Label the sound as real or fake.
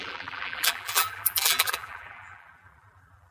fake